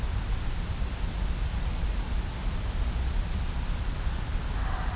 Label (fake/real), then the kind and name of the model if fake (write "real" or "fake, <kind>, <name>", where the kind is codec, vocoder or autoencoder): real